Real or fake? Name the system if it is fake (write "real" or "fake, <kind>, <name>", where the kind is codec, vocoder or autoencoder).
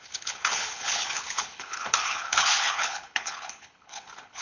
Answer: fake, codec, HILCodec